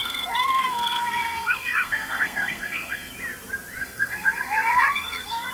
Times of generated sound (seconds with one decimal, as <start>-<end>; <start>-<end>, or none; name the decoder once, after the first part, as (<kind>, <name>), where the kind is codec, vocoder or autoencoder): 0.0-3.1 (codec, SNAC); 3.8-5.5